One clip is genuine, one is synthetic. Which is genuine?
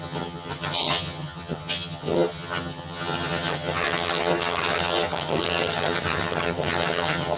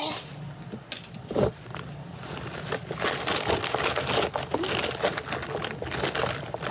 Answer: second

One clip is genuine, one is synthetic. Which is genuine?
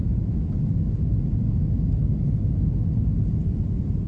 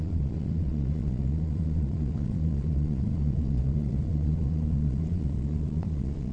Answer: first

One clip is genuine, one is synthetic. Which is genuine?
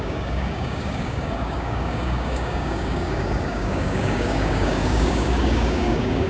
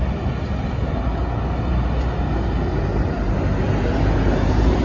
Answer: second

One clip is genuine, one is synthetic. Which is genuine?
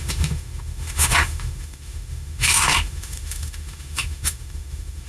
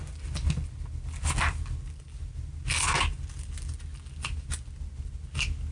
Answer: second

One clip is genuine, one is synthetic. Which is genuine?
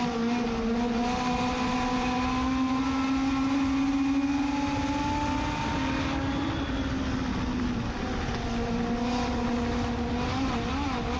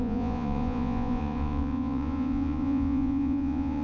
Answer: first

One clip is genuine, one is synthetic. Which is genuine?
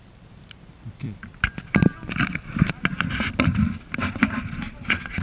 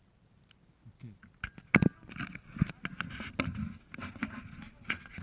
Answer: second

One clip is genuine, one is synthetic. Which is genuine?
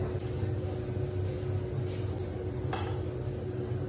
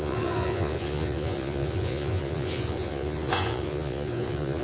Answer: first